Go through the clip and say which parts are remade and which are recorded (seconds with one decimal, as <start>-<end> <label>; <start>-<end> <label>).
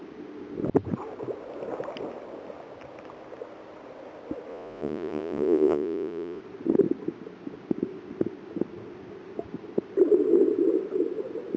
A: 0.0-4.5 recorded; 4.5-6.4 remade; 6.4-11.6 recorded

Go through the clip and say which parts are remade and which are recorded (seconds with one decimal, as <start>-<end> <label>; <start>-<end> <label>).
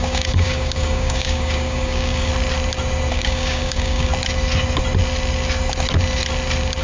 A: 0.0-2.3 remade; 2.3-3.1 recorded; 3.1-4.1 remade; 4.1-6.8 recorded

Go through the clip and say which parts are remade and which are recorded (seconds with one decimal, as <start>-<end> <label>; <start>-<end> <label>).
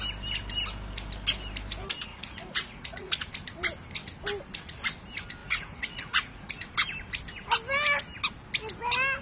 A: 0.0-2.1 recorded; 2.1-3.3 remade; 3.3-5.4 recorded; 5.4-6.6 remade; 6.6-9.2 recorded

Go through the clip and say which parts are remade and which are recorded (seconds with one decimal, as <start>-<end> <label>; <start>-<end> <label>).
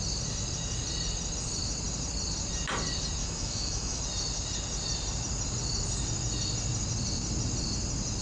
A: 0.0-3.2 recorded; 3.2-4.0 remade; 4.0-8.2 recorded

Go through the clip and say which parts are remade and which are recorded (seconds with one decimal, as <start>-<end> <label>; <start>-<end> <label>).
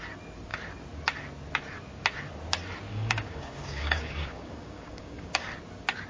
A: 0.0-2.9 recorded; 2.9-5.5 remade; 5.5-6.1 recorded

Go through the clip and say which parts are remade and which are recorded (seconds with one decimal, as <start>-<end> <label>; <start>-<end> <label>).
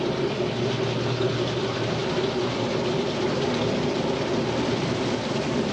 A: 0.0-5.7 recorded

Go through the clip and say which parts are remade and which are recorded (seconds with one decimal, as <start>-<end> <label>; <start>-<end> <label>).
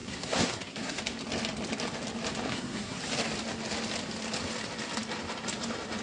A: 0.0-1.0 remade; 1.0-2.5 recorded; 2.5-3.0 remade; 3.0-6.0 recorded